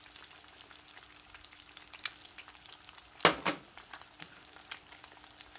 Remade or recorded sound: recorded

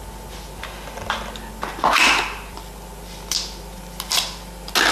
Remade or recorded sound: recorded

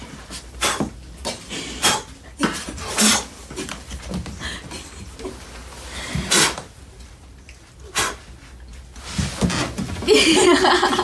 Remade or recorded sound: recorded